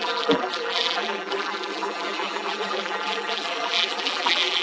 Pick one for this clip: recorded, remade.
remade